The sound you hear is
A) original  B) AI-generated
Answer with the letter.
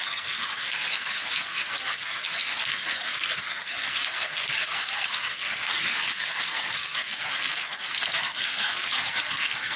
B